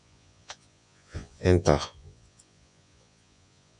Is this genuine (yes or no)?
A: no